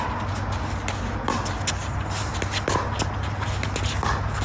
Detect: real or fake real